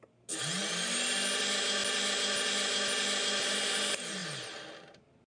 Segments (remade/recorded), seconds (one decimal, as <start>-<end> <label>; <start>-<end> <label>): 0.0-5.4 recorded